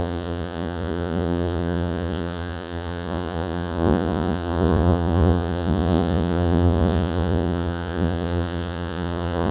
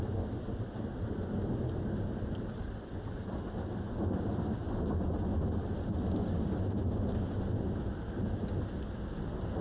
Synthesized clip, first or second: first